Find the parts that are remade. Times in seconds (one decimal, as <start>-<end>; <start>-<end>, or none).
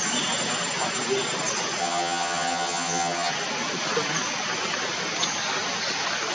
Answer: 1.8-3.3